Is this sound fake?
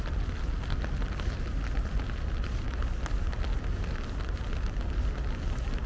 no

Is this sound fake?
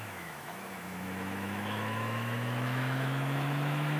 yes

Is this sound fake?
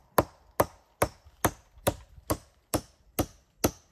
no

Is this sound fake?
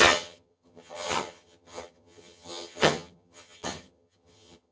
yes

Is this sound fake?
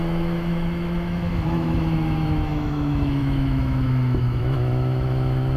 yes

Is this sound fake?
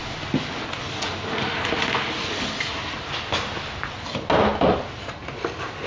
no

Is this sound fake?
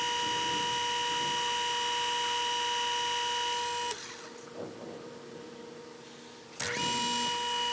no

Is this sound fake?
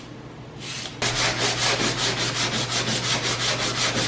no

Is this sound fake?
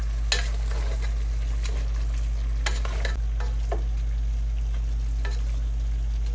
no